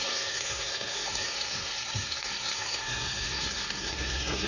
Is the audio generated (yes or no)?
yes